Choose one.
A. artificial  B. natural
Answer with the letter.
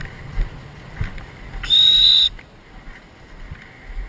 B